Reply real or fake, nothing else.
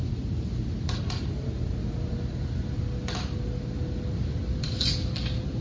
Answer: real